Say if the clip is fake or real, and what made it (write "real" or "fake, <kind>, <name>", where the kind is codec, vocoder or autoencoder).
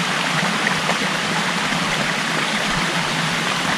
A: real